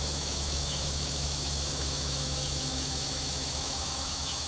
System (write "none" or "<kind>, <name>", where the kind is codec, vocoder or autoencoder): autoencoder, DAC-VAE